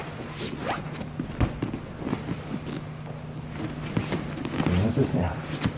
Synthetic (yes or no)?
no